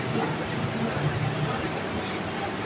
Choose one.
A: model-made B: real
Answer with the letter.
B